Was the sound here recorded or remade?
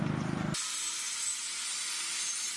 recorded